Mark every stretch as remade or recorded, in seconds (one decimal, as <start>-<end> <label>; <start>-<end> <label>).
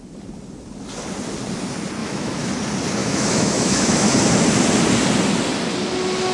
0.0-2.0 recorded; 2.0-2.5 remade; 2.5-3.0 recorded; 3.0-4.1 remade; 4.1-6.3 recorded